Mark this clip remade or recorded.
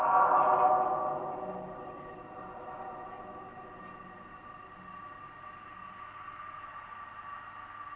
recorded